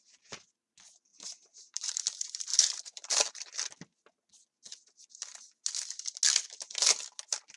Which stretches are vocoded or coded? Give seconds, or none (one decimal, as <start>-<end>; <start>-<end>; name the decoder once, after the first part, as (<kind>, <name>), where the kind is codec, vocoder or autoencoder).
1.1-2.0 (vocoder, BigVGAN v2); 2.5-3.3